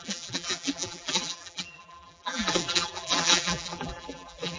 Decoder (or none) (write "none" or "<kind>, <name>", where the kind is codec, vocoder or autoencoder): vocoder, BigVGAN v2